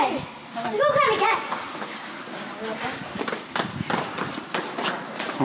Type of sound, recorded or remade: recorded